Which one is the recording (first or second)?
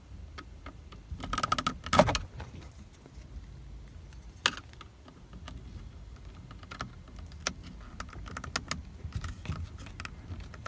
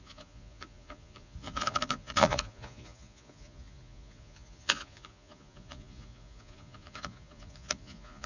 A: first